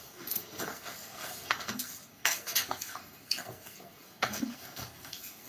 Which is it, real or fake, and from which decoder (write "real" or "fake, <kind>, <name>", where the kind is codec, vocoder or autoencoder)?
fake, codec, SNAC